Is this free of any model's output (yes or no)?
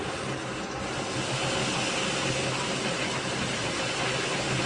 yes